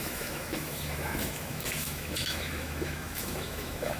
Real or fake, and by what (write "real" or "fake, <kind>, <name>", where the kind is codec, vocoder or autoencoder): fake, autoencoder, DAC-VAE